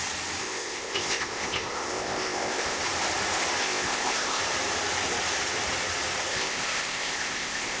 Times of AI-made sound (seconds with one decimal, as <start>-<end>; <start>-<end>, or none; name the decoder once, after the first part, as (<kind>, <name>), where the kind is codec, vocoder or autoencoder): 0.4-2.8 (codec, ZipCodec); 3.6-4.4; 6.3-7.8